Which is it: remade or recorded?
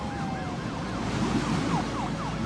recorded